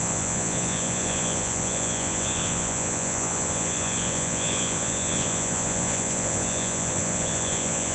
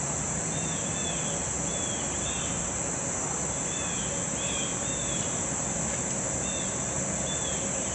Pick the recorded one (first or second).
second